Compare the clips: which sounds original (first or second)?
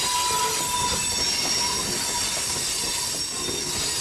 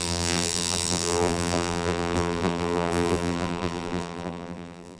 first